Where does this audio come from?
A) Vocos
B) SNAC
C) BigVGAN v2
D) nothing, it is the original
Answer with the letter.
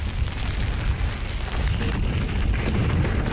D